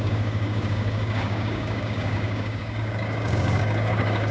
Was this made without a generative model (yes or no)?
no